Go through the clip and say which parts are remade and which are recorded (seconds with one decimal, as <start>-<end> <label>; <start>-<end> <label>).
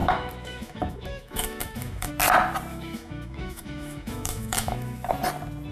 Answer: 0.0-2.1 remade; 2.1-2.7 recorded; 2.7-5.1 remade; 5.1-5.7 recorded